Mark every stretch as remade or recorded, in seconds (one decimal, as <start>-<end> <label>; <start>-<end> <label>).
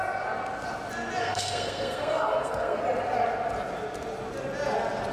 0.0-1.2 recorded; 1.2-2.8 remade; 2.8-5.1 recorded